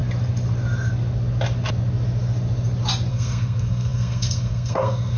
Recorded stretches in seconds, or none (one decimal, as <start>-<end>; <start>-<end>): 0.0-3.1